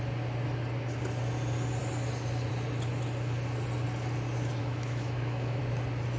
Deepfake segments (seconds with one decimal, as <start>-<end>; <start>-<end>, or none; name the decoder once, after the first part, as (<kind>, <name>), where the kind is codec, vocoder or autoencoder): 4.6-5.6 (autoencoder, DAC-VAE)